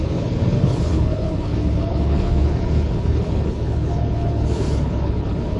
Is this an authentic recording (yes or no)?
no